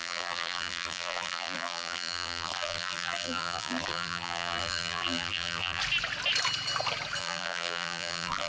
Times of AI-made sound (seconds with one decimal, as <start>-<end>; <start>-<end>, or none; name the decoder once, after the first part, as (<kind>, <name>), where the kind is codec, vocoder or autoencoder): 0.0-5.8 (vocoder, BigVGAN v2); 7.2-8.5